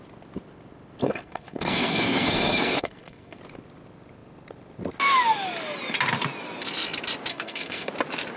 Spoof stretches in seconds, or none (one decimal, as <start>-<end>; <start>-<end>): 1.0-3.4; 7.3-7.9